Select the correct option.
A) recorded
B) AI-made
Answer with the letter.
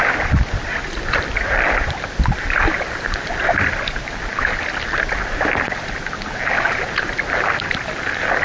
A